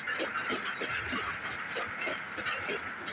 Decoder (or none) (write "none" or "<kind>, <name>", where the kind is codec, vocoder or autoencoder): none